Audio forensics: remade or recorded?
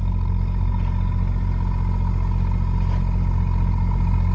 recorded